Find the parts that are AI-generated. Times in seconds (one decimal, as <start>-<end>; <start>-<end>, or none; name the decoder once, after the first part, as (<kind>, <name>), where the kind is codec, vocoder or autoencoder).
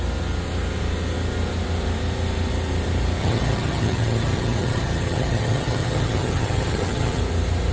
3.2-7.2 (vocoder, HiFi-GAN)